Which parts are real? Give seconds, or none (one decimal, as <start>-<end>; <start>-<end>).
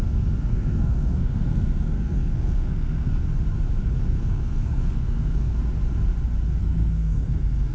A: 0.0-0.5; 3.2-3.8; 5.6-6.6